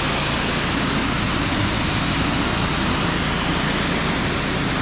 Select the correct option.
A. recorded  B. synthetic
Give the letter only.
A